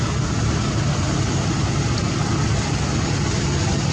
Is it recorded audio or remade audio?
recorded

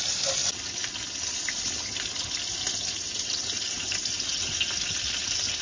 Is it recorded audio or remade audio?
recorded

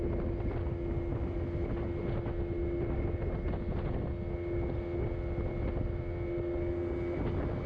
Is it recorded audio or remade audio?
recorded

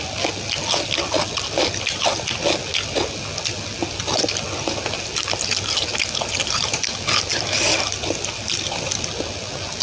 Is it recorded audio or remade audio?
recorded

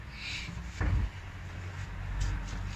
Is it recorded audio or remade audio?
recorded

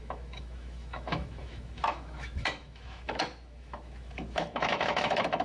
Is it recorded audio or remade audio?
remade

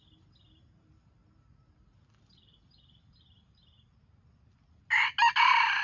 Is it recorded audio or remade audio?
recorded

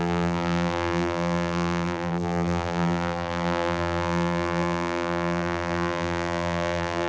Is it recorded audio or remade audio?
remade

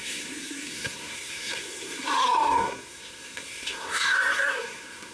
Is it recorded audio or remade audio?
remade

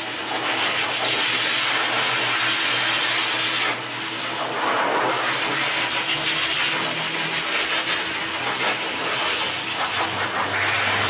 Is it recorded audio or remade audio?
recorded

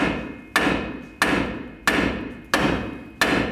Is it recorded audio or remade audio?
recorded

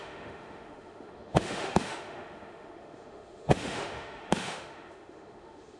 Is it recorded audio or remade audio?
remade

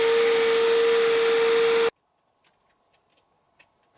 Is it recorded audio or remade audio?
recorded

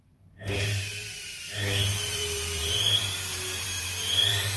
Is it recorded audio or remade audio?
remade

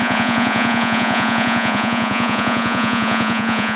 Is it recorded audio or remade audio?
remade